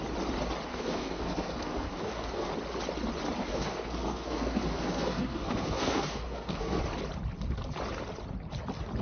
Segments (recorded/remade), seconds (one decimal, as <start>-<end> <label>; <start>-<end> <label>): 0.0-0.7 recorded; 0.7-2.5 remade; 2.5-3.4 recorded; 3.4-6.8 remade; 6.8-9.0 recorded